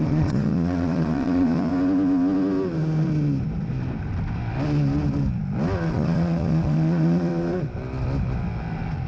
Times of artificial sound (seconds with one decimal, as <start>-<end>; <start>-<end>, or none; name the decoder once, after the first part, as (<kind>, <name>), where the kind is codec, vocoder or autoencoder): 0.0-1.7 (vocoder, Vocos); 5.9-7.3